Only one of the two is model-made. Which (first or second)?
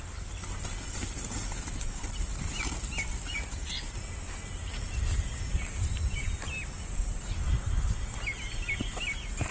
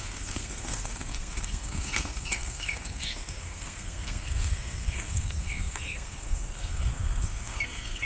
second